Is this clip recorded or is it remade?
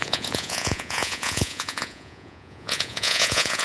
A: remade